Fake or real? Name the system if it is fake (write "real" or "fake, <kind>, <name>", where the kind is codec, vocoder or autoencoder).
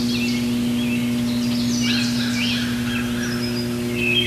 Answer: fake, vocoder, BigVGAN v2